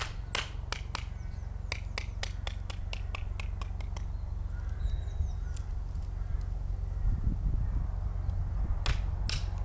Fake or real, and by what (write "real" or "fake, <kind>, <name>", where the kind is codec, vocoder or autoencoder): real